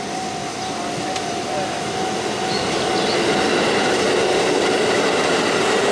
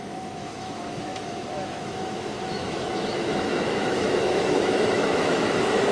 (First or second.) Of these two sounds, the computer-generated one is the second